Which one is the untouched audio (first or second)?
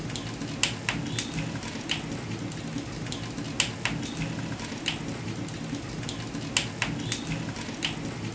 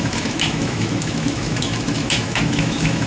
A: first